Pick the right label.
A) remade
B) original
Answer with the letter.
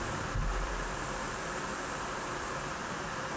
A